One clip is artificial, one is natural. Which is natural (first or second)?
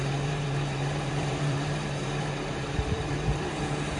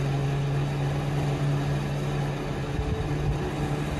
second